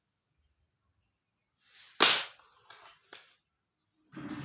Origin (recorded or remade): recorded